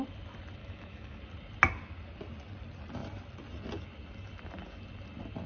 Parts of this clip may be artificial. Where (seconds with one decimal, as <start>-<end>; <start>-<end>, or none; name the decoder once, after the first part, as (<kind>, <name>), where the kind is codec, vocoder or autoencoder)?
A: 0.6-1.2 (autoencoder, DAC-VAE)